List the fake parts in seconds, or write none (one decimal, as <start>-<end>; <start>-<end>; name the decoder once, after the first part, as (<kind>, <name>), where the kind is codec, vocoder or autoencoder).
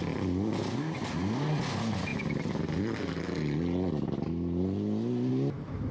none